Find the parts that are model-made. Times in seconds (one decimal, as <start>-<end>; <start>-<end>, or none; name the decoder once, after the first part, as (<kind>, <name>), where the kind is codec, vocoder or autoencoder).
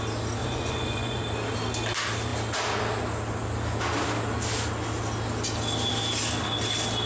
0.4-1.2 (vocoder, Vocos)